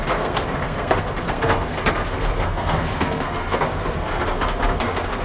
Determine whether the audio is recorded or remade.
remade